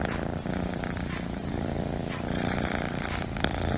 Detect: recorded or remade recorded